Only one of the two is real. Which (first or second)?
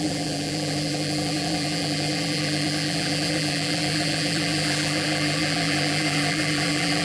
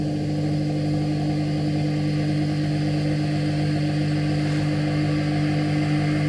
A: second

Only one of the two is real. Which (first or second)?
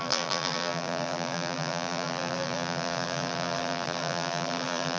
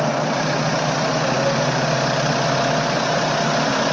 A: second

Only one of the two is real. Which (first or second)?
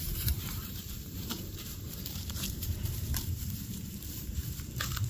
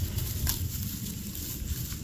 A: second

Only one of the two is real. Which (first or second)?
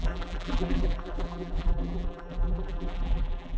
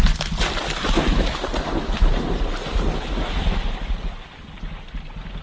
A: second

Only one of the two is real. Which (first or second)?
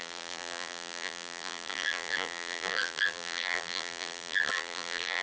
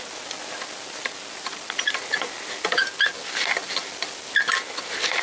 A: second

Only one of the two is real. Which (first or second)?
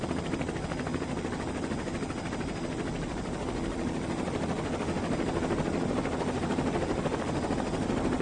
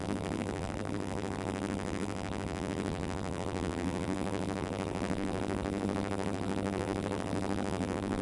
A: first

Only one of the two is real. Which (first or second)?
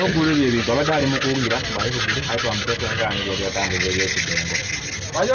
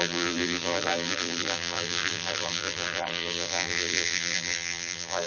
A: first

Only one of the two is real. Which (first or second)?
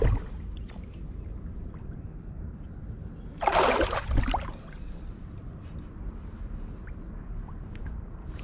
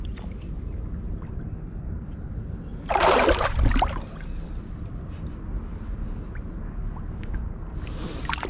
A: second